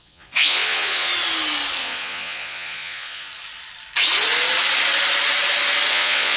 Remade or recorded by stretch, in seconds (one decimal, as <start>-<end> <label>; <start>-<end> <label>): 0.0-1.1 remade; 1.1-1.8 recorded; 1.8-3.3 remade; 3.3-5.9 recorded; 5.9-6.4 remade

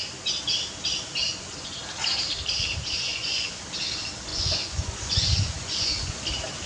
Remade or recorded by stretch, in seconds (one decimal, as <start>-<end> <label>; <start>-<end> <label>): 0.0-1.3 recorded; 1.3-1.8 remade; 1.8-3.1 recorded; 3.1-3.6 remade; 3.6-4.3 recorded; 4.3-6.1 remade; 6.1-6.7 recorded

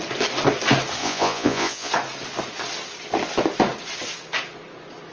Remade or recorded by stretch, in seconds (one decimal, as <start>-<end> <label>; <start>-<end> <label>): 0.0-1.0 recorded; 1.0-1.9 remade; 1.9-5.1 recorded

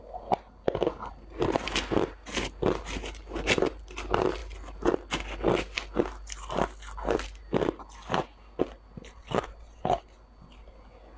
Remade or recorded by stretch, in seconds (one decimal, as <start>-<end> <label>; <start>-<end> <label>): 0.0-11.2 recorded